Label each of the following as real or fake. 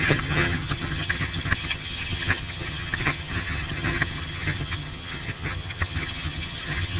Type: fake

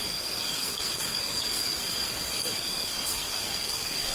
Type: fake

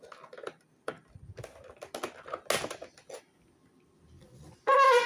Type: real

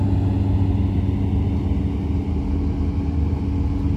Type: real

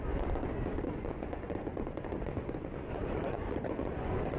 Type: fake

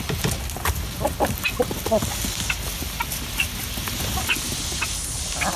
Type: real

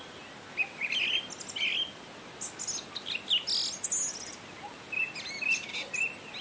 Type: real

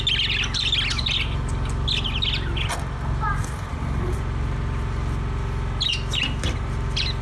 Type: real